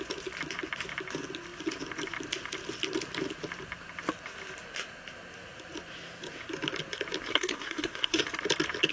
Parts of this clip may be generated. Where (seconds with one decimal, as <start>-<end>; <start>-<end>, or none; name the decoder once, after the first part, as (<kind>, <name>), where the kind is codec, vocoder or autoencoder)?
7.3-8.2 (codec, SNAC)